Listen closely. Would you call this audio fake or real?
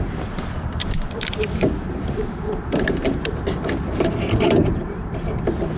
fake